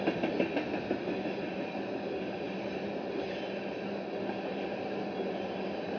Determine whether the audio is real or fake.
real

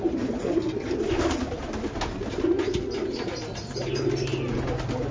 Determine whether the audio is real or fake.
real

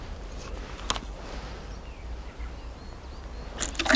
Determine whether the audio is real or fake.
real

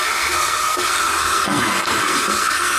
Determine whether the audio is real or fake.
fake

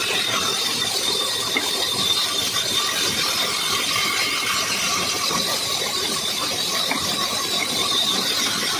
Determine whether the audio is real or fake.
fake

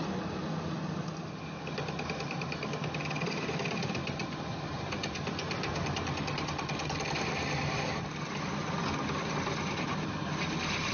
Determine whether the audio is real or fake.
real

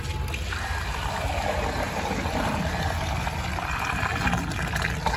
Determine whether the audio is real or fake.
real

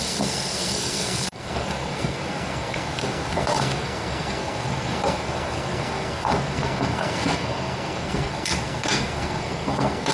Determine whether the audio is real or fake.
fake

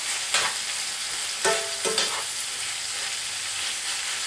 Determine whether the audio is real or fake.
real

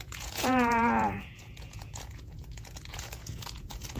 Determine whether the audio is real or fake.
fake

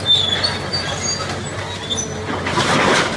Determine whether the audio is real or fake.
real